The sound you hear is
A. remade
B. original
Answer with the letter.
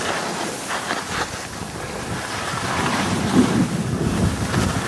B